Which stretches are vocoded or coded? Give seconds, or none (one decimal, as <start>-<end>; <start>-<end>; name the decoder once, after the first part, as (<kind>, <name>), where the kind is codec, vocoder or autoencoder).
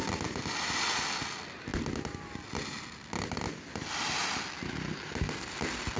none